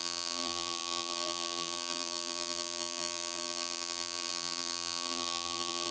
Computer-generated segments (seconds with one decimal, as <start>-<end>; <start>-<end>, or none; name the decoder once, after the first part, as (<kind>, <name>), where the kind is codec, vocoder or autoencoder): 0.0-5.9 (vocoder, BigVGAN v2)